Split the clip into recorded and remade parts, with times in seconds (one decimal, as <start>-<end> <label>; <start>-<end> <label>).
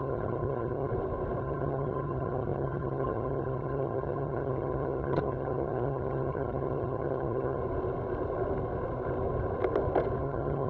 0.0-0.9 remade; 0.9-1.4 recorded; 1.4-7.6 remade; 7.6-10.2 recorded; 10.2-10.7 remade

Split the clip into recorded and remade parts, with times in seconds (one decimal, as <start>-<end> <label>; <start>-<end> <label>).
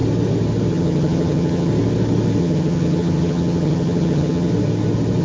0.0-0.7 recorded; 0.7-1.7 remade; 1.7-2.4 recorded; 2.4-4.5 remade; 4.5-5.2 recorded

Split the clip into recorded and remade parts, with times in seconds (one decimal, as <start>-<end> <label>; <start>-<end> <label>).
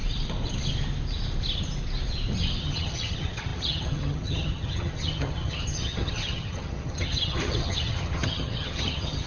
0.0-2.6 recorded; 2.6-9.3 remade